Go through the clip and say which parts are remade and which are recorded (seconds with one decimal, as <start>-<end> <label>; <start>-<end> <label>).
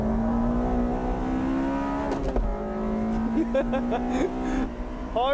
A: 0.0-5.3 recorded